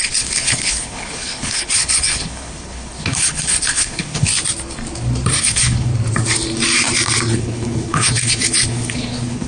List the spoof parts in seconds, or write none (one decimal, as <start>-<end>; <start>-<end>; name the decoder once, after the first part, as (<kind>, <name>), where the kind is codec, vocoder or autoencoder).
0.0-4.3 (codec, HILCodec); 5.4-5.9; 7.3-9.5